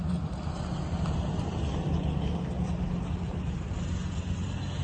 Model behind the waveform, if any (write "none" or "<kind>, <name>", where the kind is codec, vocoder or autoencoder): none